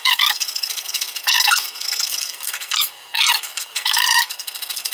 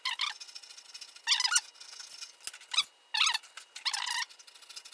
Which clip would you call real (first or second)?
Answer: second